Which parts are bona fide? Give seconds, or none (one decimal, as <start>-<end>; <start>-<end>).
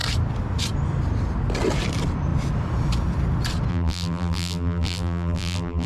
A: 0.0-3.7